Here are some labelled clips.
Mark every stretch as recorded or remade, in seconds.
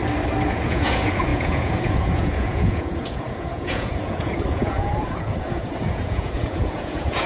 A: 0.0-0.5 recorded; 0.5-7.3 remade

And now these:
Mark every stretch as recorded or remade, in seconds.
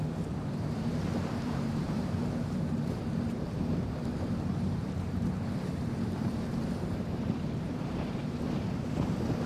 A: 0.0-9.5 remade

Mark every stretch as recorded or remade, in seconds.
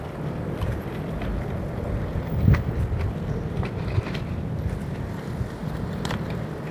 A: 0.0-5.6 recorded; 5.6-6.3 remade; 6.3-6.7 recorded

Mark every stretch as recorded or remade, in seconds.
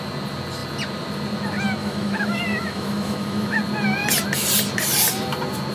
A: 0.0-1.8 recorded; 1.8-3.6 remade; 3.6-5.7 recorded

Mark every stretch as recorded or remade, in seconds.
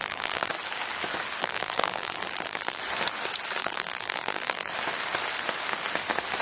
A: 0.0-0.5 remade; 0.5-1.4 recorded; 1.4-2.8 remade; 2.8-3.6 recorded; 3.6-4.7 remade; 4.7-6.4 recorded